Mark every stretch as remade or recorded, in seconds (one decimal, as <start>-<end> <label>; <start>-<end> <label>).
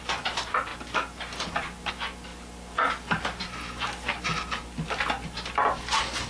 0.0-6.3 recorded